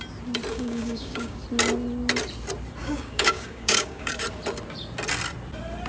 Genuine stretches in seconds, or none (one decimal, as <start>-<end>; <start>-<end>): 0.0-0.5; 1.4-2.8; 4.1-5.9